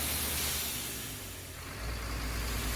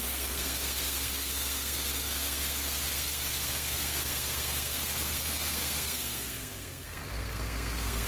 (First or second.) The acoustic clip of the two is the first